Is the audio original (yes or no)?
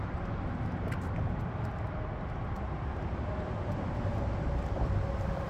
yes